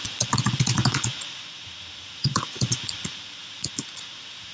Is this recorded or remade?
remade